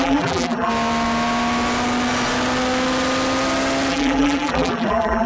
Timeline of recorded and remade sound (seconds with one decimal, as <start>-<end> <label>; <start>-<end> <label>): 0.0-0.7 remade; 0.7-3.9 recorded; 3.9-5.3 remade